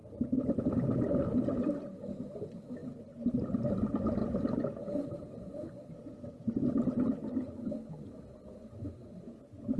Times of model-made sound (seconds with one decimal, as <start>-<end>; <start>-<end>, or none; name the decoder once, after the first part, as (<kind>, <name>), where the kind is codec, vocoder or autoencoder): 0.0-0.6 (vocoder, BigVGAN v2); 2.8-3.7; 4.2-8.2